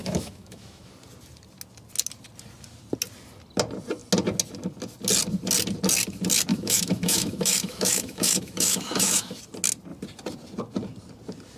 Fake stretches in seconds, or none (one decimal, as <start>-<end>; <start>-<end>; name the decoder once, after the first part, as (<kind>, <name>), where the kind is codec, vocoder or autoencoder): 0.0-0.9 (autoencoder, DAC-VAE); 6.5-9.4